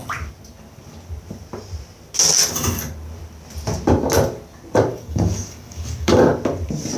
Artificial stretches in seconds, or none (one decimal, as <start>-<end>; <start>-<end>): 4.9-6.3

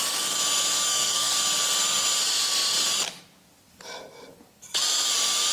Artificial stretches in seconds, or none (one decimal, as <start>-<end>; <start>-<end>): 0.9-1.4

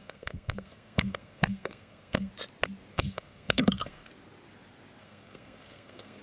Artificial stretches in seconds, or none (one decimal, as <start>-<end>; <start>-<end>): 0.0-2.3; 2.9-4.1; 5.0-6.2

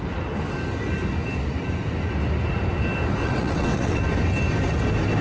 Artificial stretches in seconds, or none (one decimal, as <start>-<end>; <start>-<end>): 3.2-4.0